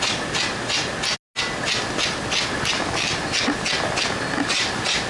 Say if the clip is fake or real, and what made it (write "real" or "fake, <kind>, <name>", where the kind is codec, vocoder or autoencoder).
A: real